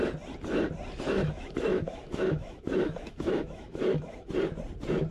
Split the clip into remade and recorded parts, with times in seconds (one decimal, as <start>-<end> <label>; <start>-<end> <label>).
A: 0.0-1.2 recorded; 1.2-4.3 remade; 4.3-5.1 recorded